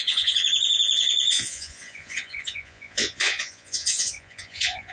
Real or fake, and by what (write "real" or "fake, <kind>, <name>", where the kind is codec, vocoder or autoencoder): fake, vocoder, Vocos